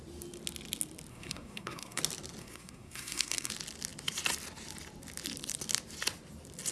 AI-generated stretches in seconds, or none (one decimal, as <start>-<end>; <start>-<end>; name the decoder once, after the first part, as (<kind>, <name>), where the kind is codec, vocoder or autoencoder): 1.1-2.0 (codec, SNAC); 2.4-3.5